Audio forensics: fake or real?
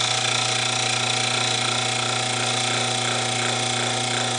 real